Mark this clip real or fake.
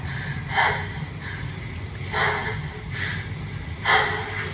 fake